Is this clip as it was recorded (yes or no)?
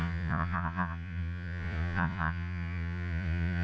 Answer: no